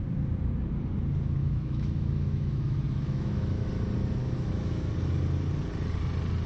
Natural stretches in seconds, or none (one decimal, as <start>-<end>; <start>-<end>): 0.0-1.4; 3.7-4.2; 4.9-6.5